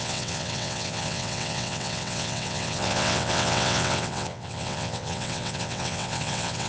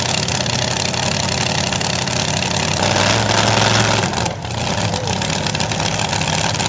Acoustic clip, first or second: second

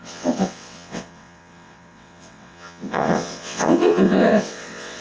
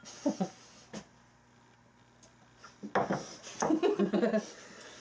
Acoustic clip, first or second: second